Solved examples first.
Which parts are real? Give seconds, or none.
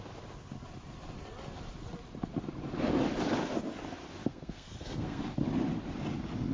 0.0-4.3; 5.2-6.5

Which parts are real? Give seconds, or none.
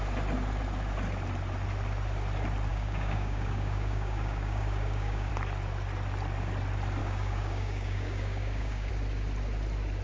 0.0-2.7; 5.3-7.0; 8.9-10.0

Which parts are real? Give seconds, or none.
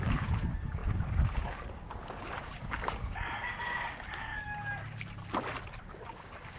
4.3-5.8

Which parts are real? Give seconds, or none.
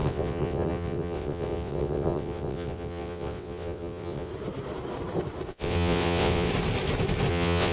4.3-5.5; 6.5-7.3